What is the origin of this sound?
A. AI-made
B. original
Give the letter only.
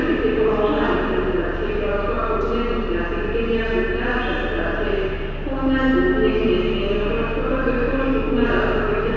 B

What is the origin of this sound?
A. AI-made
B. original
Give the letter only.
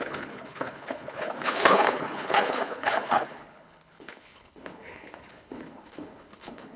A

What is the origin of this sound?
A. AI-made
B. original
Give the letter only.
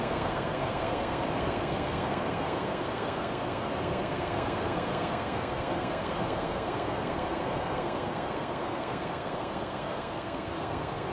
A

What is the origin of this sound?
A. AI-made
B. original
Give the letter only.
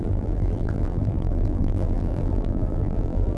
A